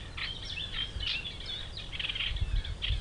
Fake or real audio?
real